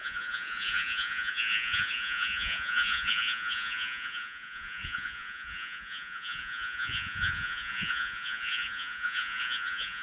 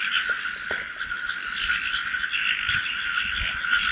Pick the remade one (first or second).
first